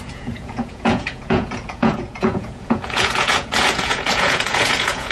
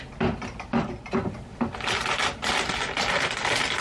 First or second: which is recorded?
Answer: second